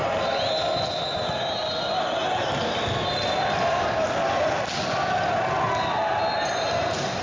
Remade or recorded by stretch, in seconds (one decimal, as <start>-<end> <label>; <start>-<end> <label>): 0.0-7.2 recorded